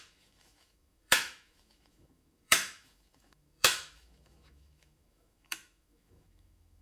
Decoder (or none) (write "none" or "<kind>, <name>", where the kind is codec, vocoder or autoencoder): autoencoder, DAC-VAE